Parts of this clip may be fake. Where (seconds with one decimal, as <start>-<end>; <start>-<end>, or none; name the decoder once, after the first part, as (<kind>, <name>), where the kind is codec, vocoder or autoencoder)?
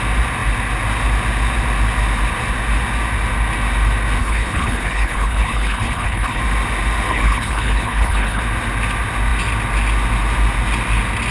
4.2-6.4 (codec, HILCodec); 7.1-8.4